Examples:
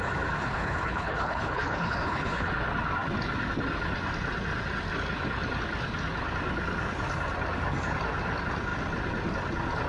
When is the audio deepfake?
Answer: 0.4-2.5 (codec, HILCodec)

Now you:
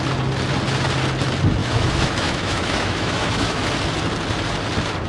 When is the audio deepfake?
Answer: 1.6-3.7 (autoencoder, DAC-VAE)

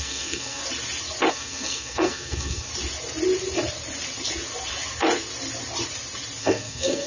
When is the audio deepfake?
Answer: 0.0-0.6 (codec, SNAC); 1.3-2.7; 6.4-7.1

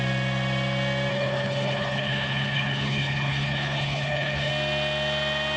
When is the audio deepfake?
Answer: 1.1-4.5 (codec, HILCodec)

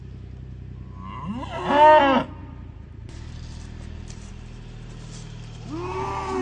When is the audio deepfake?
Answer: 2.4-4.3 (vocoder, BigVGAN v2)

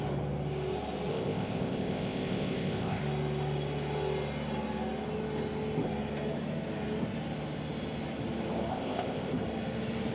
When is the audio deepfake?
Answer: 1.1-3.0 (codec, ZipCodec); 8.7-9.3

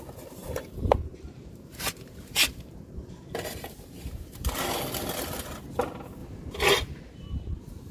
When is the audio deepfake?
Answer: 0.4-4.5 (vocoder, BigVGAN v2)